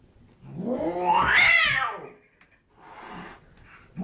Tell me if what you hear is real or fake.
real